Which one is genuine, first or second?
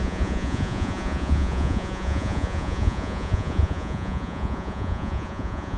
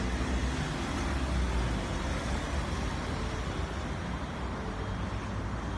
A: second